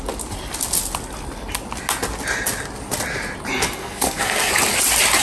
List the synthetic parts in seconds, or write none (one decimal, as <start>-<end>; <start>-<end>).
3.8-4.5

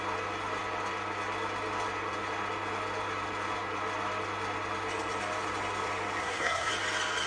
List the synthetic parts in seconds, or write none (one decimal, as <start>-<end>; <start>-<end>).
6.2-6.7

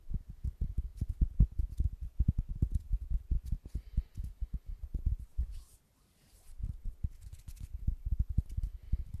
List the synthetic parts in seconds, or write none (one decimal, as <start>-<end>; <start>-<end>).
none

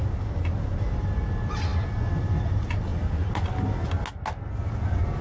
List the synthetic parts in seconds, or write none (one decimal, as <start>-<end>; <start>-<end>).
none